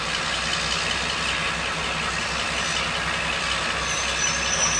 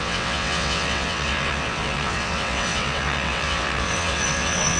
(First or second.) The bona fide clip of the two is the first